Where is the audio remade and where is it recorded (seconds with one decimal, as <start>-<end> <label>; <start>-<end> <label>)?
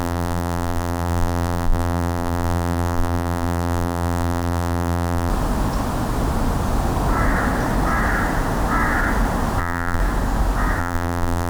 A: 0.0-5.3 remade; 5.3-9.6 recorded; 9.6-10.0 remade; 10.0-10.8 recorded; 10.8-11.5 remade